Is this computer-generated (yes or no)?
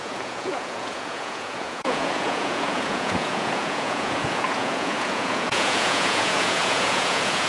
yes